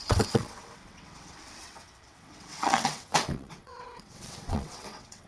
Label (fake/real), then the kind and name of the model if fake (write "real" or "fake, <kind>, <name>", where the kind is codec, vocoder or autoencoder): fake, vocoder, WaveNeXt